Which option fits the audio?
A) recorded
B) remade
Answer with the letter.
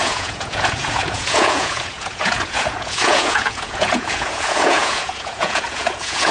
B